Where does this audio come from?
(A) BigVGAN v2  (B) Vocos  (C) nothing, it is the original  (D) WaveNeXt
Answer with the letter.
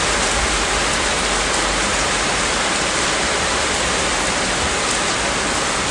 C